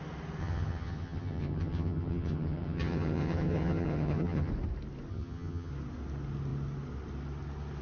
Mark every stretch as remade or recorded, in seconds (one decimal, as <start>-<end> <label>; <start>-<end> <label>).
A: 0.0-0.4 recorded; 0.4-4.5 remade; 4.5-5.1 recorded; 5.1-5.7 remade; 5.7-7.8 recorded